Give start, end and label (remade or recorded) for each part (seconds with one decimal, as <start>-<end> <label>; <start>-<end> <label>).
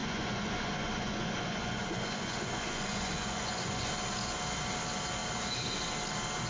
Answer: 0.0-3.9 remade; 3.9-6.5 recorded